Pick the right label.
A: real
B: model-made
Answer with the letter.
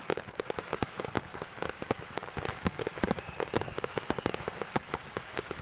B